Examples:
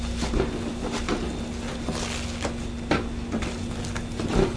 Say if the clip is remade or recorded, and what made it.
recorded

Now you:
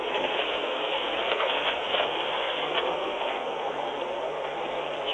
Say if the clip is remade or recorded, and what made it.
remade, codec, SNAC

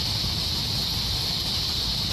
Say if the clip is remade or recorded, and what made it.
recorded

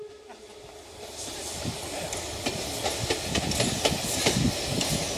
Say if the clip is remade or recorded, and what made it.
recorded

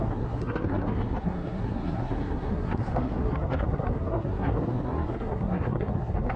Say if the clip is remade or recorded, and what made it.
remade, codec, SNAC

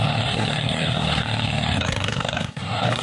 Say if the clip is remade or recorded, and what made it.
remade, codec, SNAC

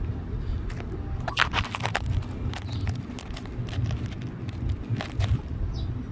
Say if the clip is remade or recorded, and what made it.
recorded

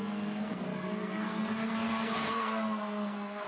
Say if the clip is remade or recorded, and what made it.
remade, codec, SNAC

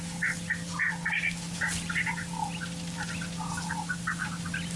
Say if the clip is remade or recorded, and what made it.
recorded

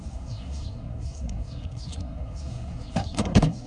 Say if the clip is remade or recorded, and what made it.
remade, codec, SNAC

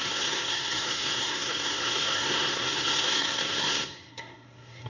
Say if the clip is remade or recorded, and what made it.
remade, codec, SNAC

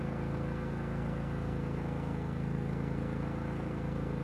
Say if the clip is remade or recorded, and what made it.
remade, codec, SNAC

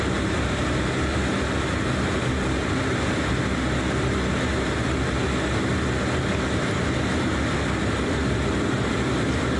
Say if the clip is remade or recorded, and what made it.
recorded